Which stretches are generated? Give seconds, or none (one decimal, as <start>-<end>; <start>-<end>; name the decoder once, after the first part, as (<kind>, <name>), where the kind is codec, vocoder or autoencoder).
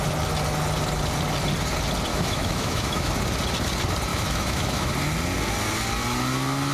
2.1-3.1 (autoencoder, DAC-VAE); 4.1-4.9